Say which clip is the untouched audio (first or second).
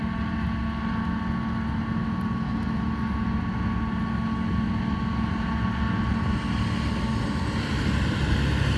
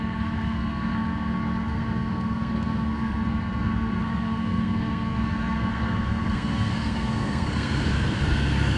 first